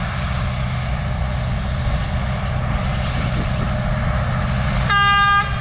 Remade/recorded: recorded